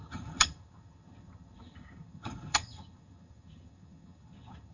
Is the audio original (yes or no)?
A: no